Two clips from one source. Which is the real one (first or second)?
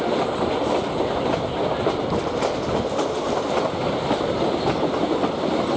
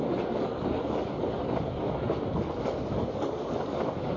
first